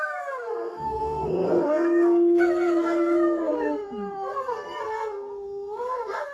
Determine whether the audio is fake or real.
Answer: fake